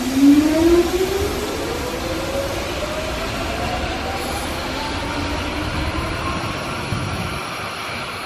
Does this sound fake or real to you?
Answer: real